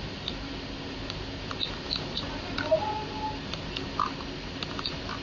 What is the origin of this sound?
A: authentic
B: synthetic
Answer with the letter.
A